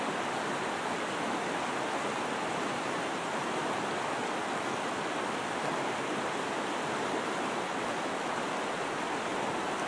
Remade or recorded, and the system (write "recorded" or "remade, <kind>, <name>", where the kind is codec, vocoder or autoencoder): recorded